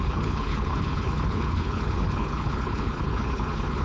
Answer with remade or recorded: remade